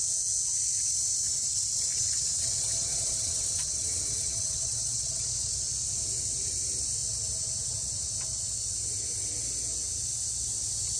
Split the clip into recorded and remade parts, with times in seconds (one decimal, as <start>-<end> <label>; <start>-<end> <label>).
0.0-1.9 recorded; 1.9-5.2 remade; 5.2-11.0 recorded